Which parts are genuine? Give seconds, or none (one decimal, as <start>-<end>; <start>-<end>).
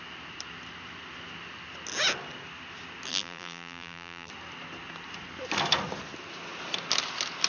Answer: 0.0-3.1; 4.3-7.5